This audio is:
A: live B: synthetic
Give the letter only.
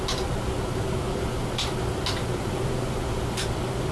A